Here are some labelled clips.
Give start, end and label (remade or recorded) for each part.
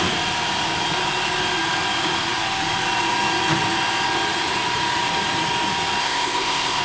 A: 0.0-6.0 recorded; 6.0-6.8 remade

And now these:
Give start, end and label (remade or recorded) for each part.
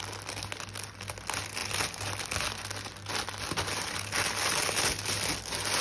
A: 0.0-5.8 recorded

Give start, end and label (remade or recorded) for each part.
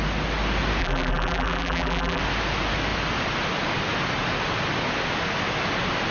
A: 0.0-0.8 recorded; 0.8-2.2 remade; 2.2-6.1 recorded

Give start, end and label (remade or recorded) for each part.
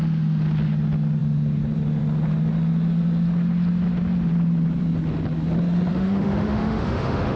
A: 0.0-5.9 recorded; 5.9-7.4 remade